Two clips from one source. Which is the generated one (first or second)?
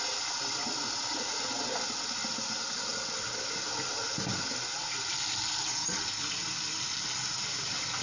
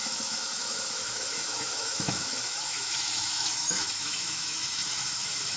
second